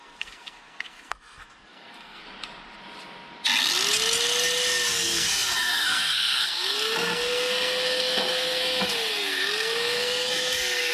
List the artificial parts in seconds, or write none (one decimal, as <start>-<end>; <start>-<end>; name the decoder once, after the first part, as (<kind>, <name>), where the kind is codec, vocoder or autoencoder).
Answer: 0.0-2.2 (codec, SNAC); 4.9-10.9

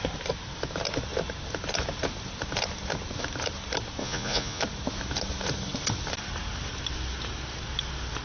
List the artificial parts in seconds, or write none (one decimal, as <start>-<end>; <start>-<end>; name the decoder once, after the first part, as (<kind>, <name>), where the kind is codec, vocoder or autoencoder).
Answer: 4.0-4.6 (vocoder, Vocos)

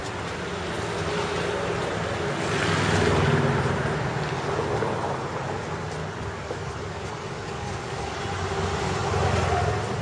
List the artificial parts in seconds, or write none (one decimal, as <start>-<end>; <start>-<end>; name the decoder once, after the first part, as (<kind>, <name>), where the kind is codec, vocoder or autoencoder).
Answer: 6.0-8.2 (codec, DAC)

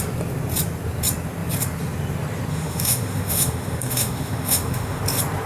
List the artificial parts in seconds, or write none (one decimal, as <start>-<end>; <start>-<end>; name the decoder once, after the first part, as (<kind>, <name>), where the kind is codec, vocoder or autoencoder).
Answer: 2.5-5.0 (autoencoder, DAC-VAE)

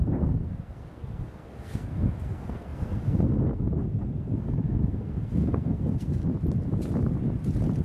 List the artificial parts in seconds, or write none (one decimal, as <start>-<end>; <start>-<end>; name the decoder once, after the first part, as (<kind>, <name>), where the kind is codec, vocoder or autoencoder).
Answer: 0.0-6.2 (codec, SNAC)

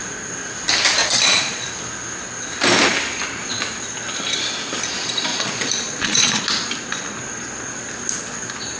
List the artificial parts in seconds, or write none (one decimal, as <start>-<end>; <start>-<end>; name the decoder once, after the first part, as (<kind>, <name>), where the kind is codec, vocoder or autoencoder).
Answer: 1.0-1.7 (vocoder, Vocos); 5.3-6.4

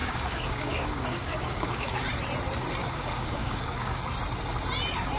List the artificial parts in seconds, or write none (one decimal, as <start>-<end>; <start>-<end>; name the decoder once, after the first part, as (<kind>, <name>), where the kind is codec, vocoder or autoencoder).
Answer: 0.0-2.0 (codec, DAC); 2.8-4.0

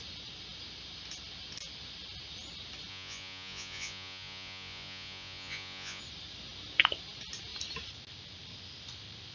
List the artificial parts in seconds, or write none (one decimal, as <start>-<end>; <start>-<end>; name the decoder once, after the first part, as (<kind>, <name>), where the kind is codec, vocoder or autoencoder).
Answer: 2.9-6.0 (vocoder, Vocos)